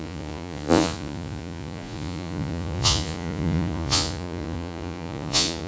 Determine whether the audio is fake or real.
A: fake